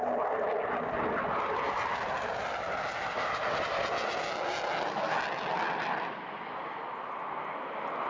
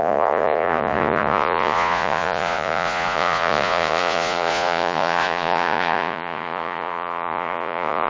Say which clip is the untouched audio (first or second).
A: first